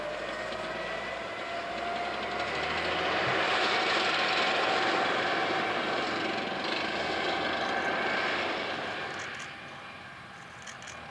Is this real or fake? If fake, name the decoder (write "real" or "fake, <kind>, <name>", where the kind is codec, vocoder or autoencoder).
real